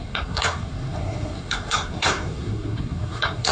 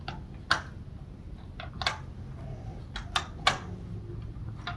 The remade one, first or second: first